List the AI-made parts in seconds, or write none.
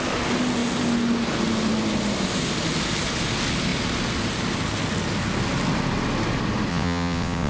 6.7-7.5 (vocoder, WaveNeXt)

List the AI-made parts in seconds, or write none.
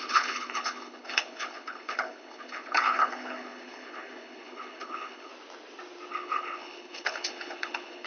0.0-5.3 (codec, HILCodec); 6.1-8.1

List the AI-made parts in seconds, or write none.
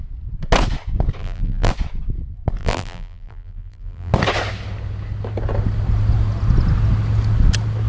1.2-1.7 (vocoder, BigVGAN v2); 2.6-4.1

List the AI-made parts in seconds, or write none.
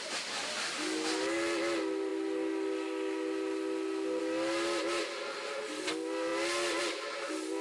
none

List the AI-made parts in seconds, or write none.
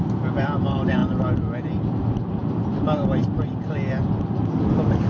none